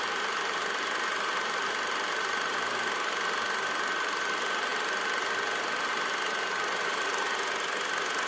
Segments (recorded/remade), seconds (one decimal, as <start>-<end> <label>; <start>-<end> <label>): 0.0-8.3 recorded